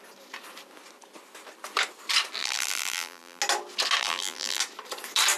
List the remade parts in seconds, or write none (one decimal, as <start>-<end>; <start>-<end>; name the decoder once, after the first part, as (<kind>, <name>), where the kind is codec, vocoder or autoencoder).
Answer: 2.4-3.4 (vocoder, BigVGAN v2); 4.0-4.6